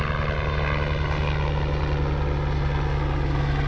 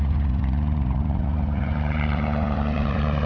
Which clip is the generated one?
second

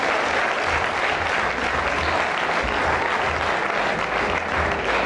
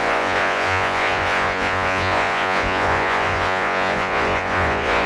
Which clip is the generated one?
second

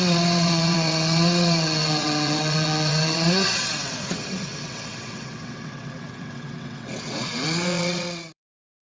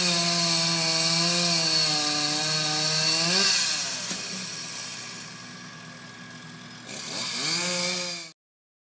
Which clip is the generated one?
first